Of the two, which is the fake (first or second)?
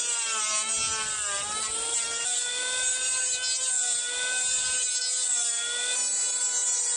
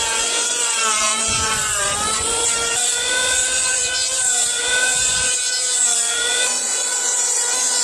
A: second